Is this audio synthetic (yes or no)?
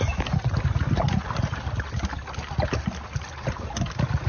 no